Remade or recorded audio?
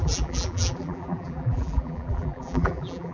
remade